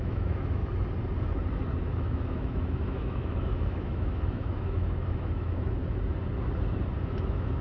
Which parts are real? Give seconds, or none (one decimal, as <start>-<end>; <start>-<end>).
0.6-1.8; 5.8-7.0